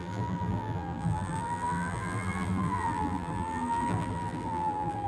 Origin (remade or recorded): remade